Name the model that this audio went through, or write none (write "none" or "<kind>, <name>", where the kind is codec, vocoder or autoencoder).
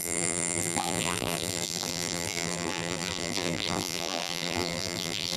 vocoder, BigVGAN v2